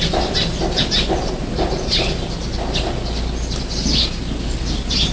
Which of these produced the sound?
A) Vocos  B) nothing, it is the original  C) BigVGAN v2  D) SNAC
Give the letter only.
B